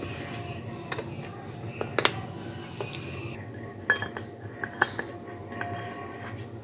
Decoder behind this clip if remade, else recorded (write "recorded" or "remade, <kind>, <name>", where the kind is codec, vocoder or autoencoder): recorded